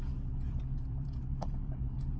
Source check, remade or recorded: remade